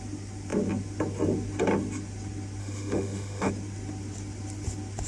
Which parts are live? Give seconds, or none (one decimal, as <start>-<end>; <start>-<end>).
0.0-2.6; 3.5-5.1